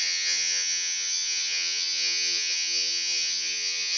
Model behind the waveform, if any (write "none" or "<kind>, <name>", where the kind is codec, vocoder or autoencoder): vocoder, HiFi-GAN